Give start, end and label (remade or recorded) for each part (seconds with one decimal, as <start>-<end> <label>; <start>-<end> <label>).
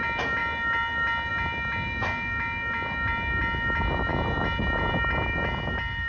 0.0-6.1 recorded